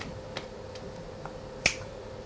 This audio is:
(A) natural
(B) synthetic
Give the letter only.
A